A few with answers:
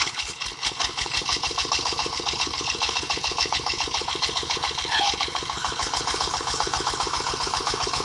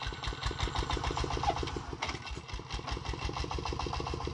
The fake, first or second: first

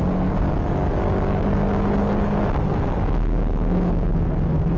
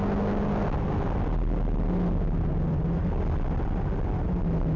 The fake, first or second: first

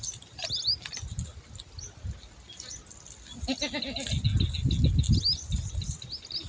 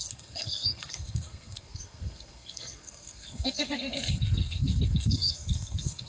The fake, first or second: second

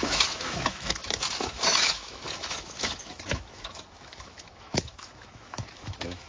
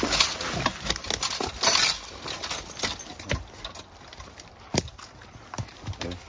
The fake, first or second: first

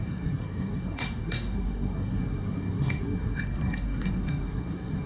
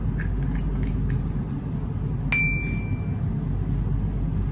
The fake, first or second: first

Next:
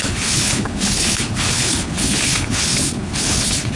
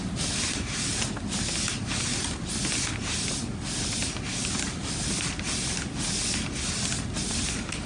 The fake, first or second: first